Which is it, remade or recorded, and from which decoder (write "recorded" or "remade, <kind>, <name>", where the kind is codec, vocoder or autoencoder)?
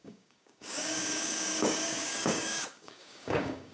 remade, codec, DAC